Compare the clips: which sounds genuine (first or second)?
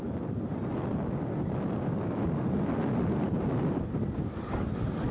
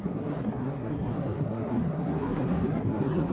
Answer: first